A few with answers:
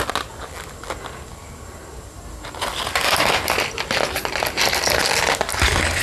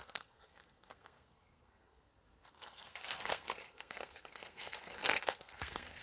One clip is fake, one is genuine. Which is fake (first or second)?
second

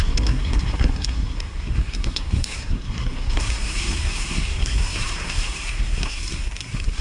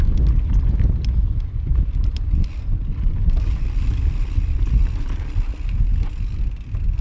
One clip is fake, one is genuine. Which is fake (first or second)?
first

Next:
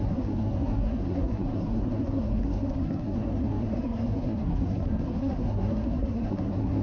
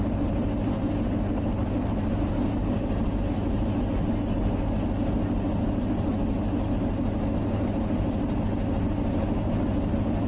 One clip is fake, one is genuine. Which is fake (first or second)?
first